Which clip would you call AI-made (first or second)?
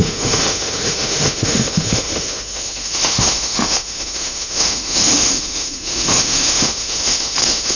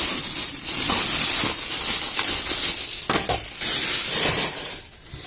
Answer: first